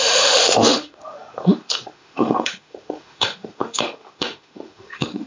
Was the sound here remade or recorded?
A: remade